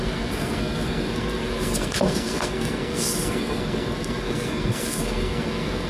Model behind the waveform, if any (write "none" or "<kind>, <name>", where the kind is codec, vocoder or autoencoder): codec, SNAC